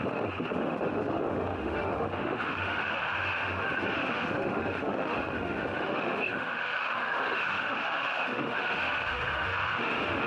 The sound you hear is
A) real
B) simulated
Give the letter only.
B